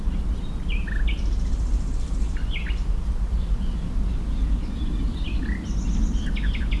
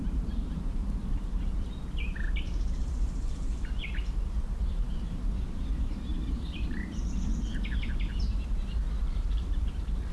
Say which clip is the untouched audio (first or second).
first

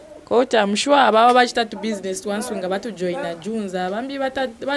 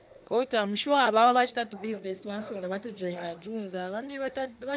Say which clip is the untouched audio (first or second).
first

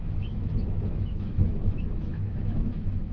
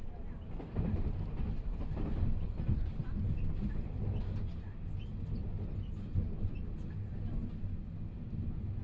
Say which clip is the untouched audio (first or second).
second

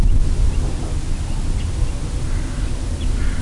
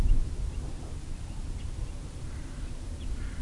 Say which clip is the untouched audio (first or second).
first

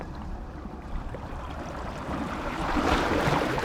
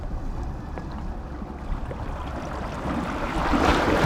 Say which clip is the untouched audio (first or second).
second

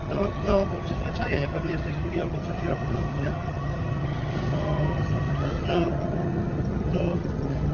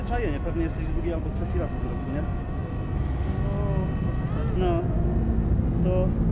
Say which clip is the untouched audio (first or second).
second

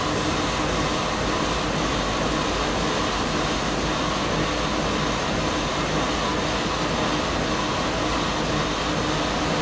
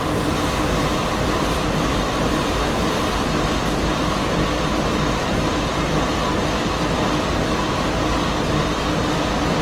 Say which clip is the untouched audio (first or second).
first